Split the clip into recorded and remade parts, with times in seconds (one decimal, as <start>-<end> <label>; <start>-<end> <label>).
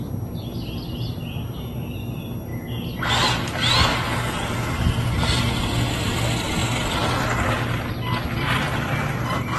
0.0-3.9 recorded; 3.9-4.5 remade; 4.5-9.6 recorded